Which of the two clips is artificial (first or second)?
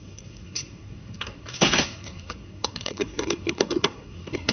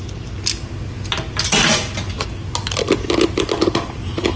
first